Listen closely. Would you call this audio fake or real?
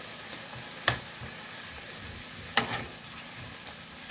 real